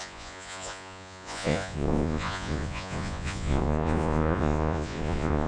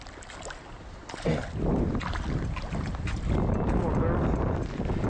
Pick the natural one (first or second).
second